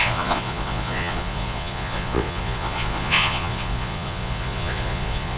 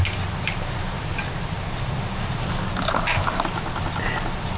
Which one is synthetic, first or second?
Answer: first